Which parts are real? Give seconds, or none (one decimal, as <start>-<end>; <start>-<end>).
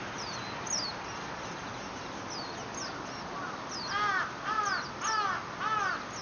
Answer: 0.0-6.2